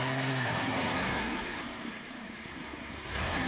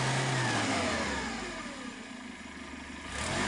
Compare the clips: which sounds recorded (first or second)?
second